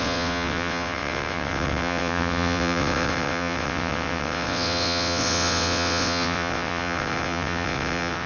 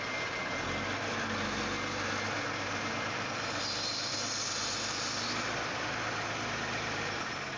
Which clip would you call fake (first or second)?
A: first